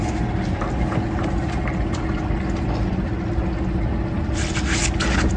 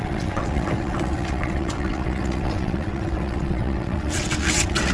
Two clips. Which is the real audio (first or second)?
first